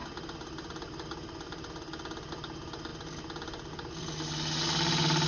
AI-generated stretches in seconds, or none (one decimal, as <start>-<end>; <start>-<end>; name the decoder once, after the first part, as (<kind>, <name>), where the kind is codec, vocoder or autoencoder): none

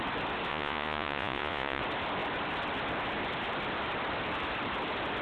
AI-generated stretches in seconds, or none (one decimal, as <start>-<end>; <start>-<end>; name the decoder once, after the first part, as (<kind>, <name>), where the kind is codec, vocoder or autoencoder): 0.5-1.8 (vocoder, Vocos)

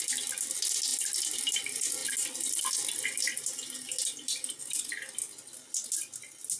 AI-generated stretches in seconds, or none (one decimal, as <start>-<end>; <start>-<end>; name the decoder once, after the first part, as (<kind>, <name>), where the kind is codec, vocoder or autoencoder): none

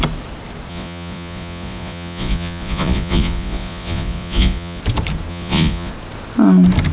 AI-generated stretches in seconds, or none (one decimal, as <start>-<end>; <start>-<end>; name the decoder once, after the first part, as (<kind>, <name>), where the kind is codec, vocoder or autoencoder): 0.7-4.8 (vocoder, Vocos); 5.3-5.9

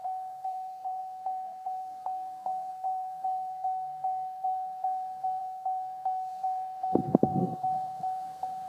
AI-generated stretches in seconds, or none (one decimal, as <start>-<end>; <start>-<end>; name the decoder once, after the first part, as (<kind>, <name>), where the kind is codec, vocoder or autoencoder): 0.0-8.7 (codec, SNAC)

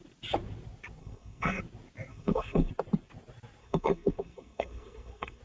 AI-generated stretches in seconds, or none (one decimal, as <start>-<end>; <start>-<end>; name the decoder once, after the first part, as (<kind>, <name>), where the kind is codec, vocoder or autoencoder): 1.0-1.6 (codec, SNAC); 2.1-2.7; 3.6-5.4

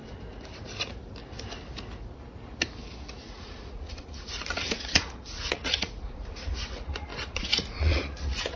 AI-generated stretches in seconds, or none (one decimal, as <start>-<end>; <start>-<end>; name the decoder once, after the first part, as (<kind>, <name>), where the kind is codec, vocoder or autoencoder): 3.3-8.6 (vocoder, Vocos)